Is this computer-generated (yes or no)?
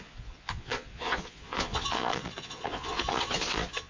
yes